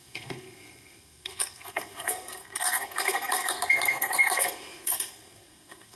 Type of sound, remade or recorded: remade